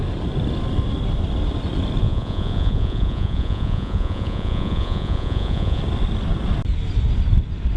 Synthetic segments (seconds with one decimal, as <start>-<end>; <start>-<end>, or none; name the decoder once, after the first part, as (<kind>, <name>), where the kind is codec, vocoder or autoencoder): 2.0-5.8 (vocoder, Vocos)